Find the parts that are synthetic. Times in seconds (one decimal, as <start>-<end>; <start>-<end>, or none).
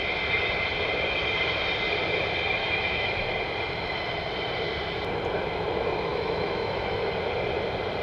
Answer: 2.6-3.3; 6.1-7.1